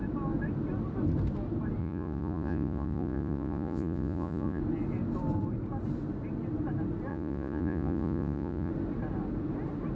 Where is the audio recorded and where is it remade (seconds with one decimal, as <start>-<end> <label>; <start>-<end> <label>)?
0.0-1.8 recorded; 1.8-4.6 remade; 4.6-7.1 recorded; 7.1-8.7 remade; 8.7-9.9 recorded